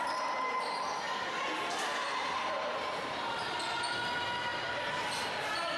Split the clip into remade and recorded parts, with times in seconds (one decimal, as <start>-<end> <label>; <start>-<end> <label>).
0.0-1.9 recorded; 1.9-3.5 remade; 3.5-5.8 recorded